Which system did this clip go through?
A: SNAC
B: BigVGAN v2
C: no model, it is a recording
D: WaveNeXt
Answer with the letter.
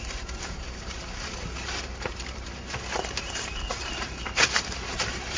B